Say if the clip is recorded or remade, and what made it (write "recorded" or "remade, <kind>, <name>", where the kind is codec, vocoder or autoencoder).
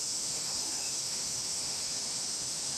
remade, autoencoder, DAC-VAE